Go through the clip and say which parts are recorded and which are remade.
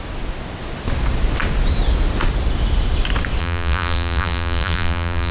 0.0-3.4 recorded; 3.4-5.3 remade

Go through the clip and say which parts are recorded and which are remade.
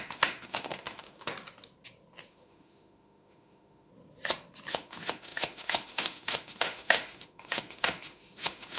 0.0-1.3 remade; 1.3-2.3 recorded; 2.3-3.9 remade; 3.9-4.7 recorded; 4.7-8.8 remade